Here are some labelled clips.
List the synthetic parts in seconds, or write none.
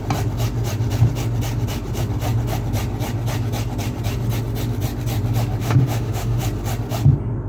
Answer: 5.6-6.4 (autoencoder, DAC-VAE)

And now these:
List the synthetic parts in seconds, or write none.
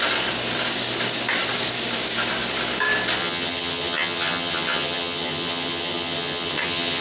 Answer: 3.2-7.0 (vocoder, HiFi-GAN)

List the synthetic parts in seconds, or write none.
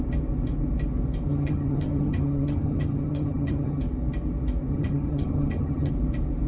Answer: 1.3-3.8 (vocoder, HiFi-GAN); 4.7-5.9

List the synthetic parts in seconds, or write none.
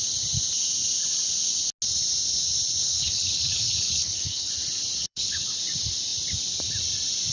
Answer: 2.8-4.5 (codec, HILCodec); 5.0-5.6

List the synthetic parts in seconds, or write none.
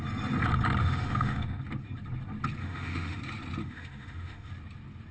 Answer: 0.8-1.6 (autoencoder, DAC-VAE); 2.6-3.2; 3.6-4.5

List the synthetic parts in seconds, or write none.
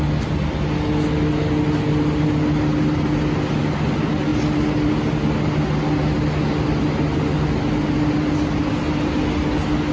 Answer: none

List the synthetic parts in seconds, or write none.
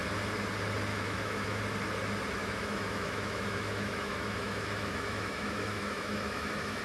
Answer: 0.9-1.6 (autoencoder, DAC-VAE); 2.4-6.8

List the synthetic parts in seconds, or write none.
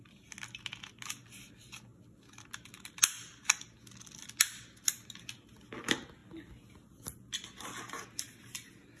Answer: none